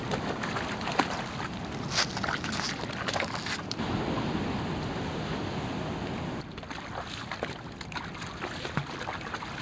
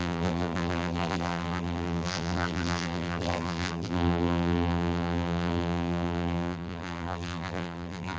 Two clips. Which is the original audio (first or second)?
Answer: first